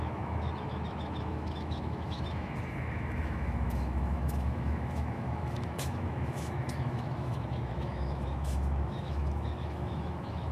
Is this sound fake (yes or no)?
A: yes